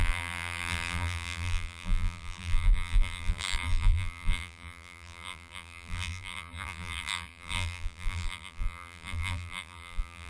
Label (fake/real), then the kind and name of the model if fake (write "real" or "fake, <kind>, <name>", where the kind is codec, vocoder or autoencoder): fake, vocoder, BigVGAN v2